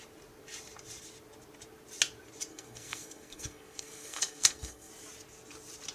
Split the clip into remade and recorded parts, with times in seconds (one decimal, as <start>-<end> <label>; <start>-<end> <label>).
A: 0.0-2.5 recorded; 2.5-4.9 remade; 4.9-5.9 recorded